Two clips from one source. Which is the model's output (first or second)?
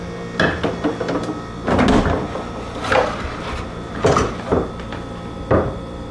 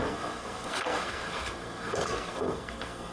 second